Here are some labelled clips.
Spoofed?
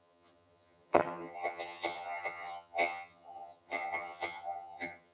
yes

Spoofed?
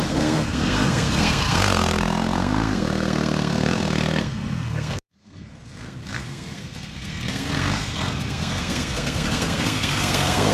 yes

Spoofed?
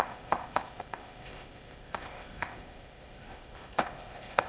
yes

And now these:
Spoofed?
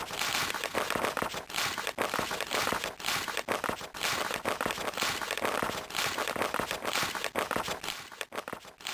no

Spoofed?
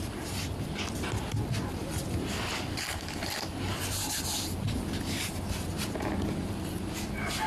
no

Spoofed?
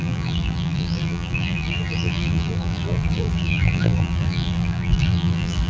yes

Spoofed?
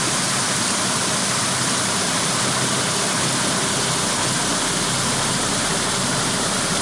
no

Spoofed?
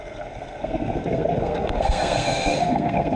yes